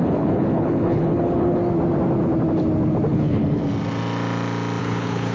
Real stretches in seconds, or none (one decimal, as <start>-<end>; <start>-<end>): 1.6-3.1; 3.6-4.8

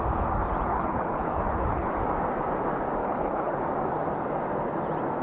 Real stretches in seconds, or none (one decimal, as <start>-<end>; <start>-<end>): 0.0-0.7; 1.9-3.0; 3.6-5.2

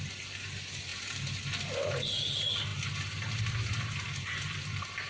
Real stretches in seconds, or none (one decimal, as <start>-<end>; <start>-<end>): 0.0-5.1

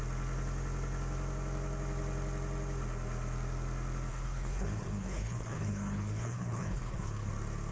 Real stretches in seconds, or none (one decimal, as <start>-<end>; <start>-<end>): 0.0-4.1; 7.3-7.7

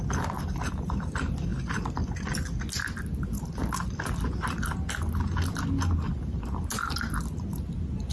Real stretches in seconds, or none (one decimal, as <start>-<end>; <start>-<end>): 0.0-8.1

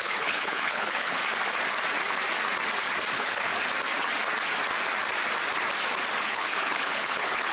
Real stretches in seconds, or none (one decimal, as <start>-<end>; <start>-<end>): 1.2-3.1; 3.5-6.2

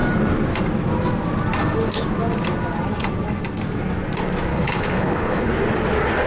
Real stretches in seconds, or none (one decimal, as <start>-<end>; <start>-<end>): 0.0-4.5; 5.5-6.3

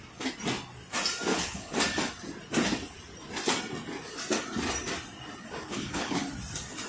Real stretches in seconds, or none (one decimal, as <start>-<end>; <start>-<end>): 0.0-1.3; 1.8-5.6; 6.2-6.9